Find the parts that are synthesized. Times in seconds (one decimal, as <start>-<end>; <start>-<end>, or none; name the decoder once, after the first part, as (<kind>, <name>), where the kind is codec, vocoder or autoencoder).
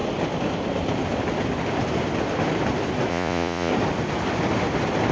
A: 3.1-3.7 (vocoder, Vocos)